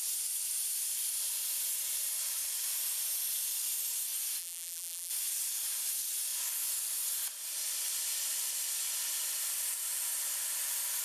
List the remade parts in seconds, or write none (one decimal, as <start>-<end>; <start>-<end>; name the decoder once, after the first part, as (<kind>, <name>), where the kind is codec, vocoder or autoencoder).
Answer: 4.4-5.1 (vocoder, BigVGAN v2)